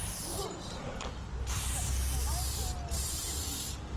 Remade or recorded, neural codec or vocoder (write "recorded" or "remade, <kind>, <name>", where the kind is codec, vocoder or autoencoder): recorded